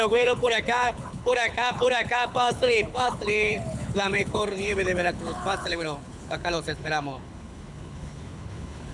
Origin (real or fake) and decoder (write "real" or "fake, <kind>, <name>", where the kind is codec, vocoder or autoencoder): fake, codec, HILCodec